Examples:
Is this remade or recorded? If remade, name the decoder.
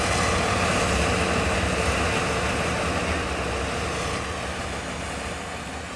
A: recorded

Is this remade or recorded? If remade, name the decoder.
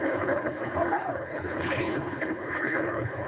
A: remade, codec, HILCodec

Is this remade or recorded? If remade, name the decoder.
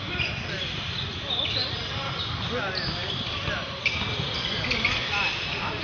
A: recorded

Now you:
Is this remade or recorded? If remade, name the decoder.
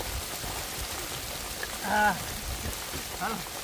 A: recorded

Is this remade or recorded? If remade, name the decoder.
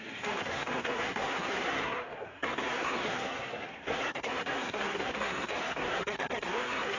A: remade, codec, SNAC